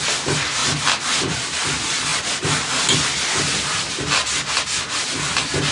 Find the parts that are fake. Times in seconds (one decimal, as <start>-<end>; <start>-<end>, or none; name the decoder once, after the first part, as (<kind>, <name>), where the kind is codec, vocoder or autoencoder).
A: none